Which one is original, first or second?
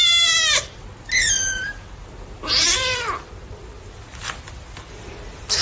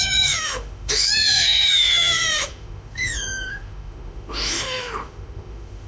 first